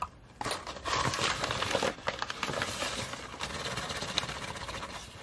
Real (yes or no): yes